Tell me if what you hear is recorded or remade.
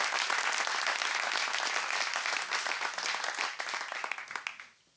recorded